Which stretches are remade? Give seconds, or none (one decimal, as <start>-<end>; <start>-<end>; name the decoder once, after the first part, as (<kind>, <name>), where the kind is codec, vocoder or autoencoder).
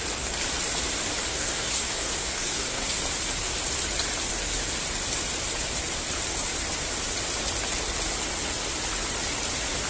1.3-3.0 (codec, SNAC)